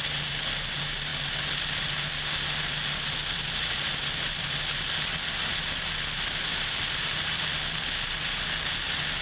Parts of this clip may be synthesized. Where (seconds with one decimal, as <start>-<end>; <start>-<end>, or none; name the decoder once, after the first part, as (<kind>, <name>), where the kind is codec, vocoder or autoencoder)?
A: none